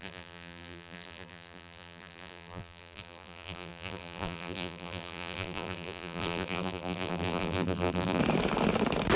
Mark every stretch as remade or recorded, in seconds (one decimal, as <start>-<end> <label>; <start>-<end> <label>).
0.0-8.2 remade; 8.2-9.2 recorded